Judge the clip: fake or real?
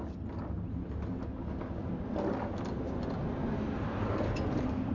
real